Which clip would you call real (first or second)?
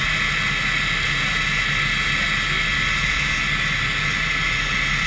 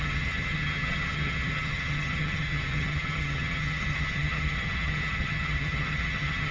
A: first